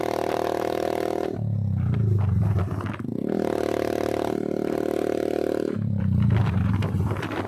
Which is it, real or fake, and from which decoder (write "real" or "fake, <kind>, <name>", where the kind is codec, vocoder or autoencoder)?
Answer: fake, vocoder, BigVGAN v2